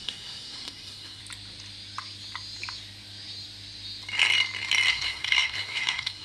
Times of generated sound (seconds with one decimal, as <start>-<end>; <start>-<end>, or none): 0.0-1.2; 4.9-6.2